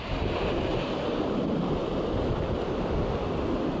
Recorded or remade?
recorded